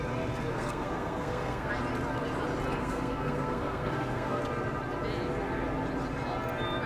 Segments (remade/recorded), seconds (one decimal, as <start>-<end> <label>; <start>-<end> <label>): 0.0-0.5 recorded; 0.5-1.7 remade; 1.7-2.8 recorded; 2.8-4.4 remade; 4.4-6.9 recorded